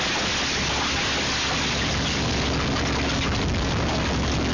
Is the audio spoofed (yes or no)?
no